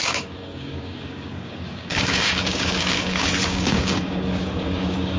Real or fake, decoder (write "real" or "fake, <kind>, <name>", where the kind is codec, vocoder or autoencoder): fake, codec, DAC